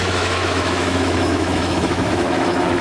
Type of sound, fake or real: fake